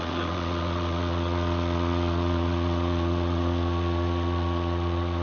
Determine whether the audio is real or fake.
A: fake